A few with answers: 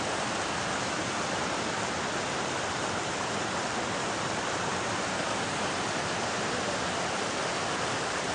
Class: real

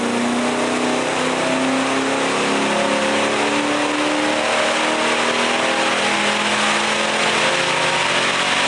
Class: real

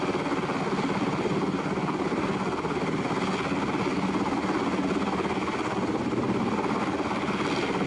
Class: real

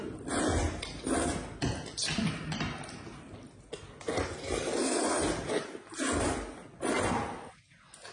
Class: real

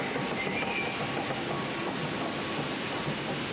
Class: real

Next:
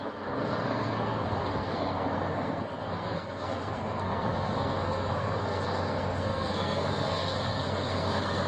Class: fake